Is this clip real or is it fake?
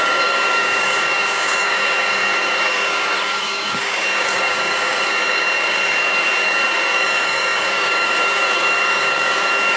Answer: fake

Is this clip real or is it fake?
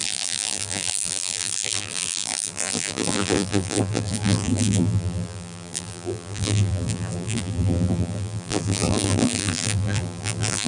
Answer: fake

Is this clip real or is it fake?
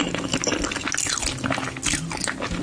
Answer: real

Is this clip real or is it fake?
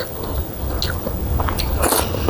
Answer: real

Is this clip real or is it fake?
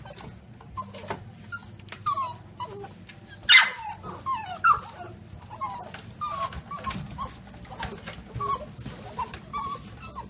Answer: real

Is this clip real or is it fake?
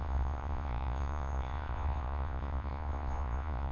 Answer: fake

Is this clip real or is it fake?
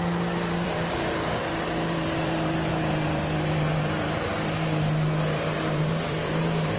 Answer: fake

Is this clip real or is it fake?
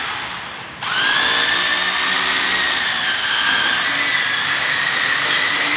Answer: real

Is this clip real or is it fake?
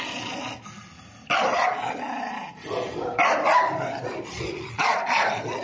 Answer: real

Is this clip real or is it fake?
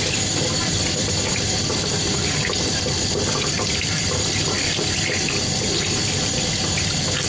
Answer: fake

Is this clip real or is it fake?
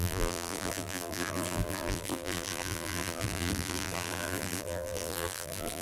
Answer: fake